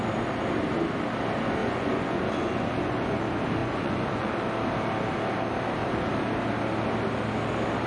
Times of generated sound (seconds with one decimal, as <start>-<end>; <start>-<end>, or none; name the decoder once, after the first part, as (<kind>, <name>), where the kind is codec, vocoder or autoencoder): 1.6-3.2 (vocoder, Vocos); 3.6-4.3